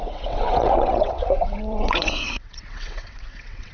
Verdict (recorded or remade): remade